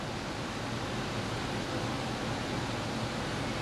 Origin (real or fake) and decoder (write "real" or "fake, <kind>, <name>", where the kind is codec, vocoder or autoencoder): real